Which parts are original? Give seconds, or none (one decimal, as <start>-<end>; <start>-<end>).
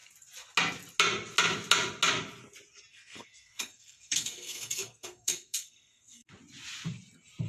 0.0-2.9; 6.3-7.5